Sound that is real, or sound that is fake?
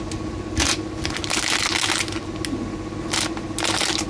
real